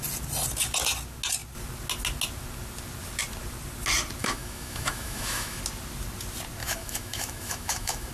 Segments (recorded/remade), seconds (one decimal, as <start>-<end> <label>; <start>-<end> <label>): 0.0-4.2 recorded; 4.2-5.6 remade; 5.6-6.6 recorded; 6.6-8.1 remade